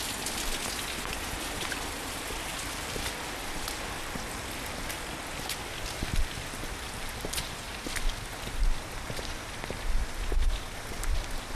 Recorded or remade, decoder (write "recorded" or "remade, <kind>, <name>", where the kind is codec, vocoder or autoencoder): recorded